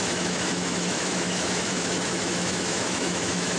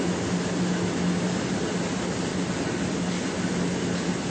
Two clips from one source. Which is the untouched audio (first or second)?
second